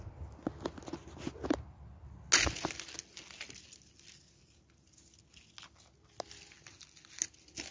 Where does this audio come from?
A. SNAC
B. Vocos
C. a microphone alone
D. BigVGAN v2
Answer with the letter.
C